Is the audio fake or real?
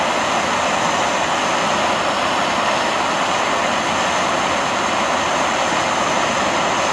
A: real